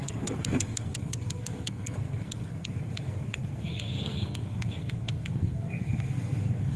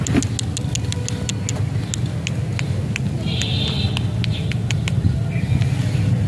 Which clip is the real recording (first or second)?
second